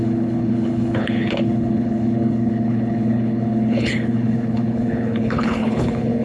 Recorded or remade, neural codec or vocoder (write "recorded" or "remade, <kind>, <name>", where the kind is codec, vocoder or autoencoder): remade, codec, HILCodec